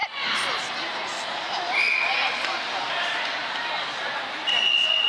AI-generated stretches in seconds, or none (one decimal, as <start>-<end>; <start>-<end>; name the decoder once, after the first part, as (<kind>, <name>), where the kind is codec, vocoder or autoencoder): none